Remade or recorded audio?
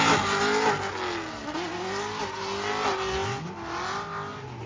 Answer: recorded